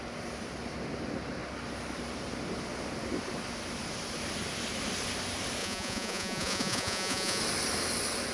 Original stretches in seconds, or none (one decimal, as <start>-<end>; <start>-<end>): 0.0-5.6; 7.4-8.3

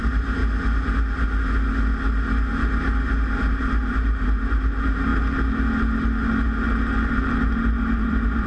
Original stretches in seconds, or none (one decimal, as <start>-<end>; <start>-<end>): 0.4-3.5; 5.1-7.1

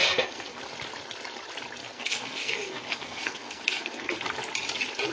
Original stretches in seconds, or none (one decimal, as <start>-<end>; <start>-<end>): 0.6-1.8; 4.2-5.1

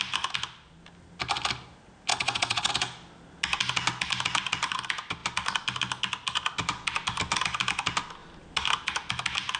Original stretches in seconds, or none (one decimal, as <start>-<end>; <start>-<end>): 0.0-2.1; 2.7-9.6

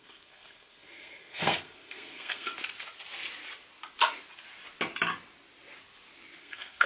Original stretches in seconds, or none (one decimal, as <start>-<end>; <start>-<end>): 2.5-6.4

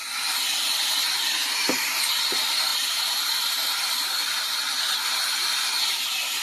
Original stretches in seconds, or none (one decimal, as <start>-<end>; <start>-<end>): 0.0-6.4

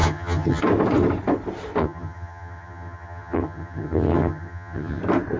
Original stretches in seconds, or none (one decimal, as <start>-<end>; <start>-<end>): 0.6-1.8; 5.0-5.4

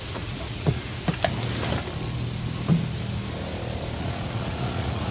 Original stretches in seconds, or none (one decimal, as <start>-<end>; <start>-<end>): 0.9-4.0